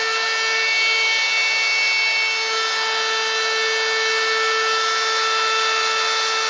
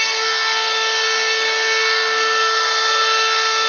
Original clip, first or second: first